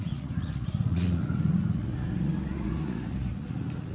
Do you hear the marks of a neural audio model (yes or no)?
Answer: yes